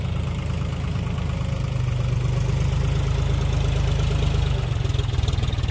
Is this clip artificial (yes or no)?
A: no